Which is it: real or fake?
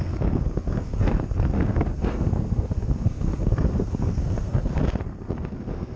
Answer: fake